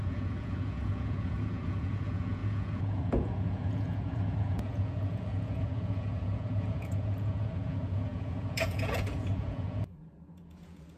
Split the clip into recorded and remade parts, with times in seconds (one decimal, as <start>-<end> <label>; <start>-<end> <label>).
0.0-11.0 remade